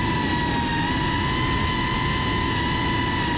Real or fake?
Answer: real